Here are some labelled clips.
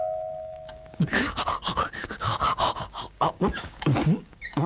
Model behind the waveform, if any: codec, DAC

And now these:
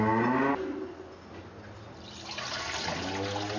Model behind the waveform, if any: none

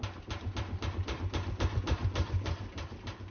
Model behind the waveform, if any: none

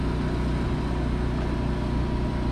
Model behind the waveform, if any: none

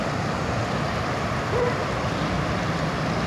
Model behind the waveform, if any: none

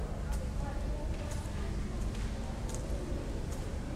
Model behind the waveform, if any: none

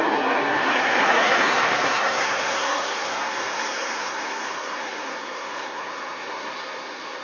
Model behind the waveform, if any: codec, SNAC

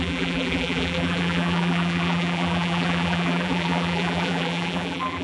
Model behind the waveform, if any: vocoder, BigVGAN v2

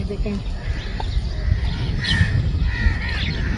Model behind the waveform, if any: none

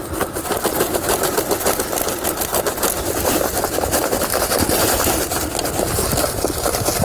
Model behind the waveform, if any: none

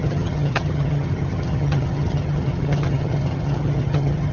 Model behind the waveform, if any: vocoder, HiFi-GAN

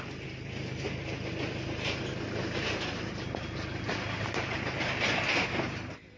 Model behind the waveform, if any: none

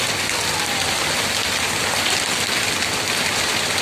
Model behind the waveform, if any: none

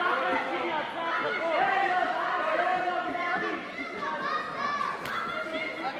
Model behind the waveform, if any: none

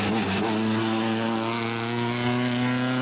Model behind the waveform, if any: none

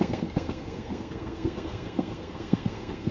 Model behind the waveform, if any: codec, SNAC